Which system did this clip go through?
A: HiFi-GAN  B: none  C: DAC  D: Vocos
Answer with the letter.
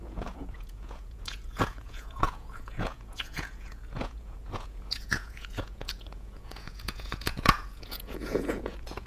D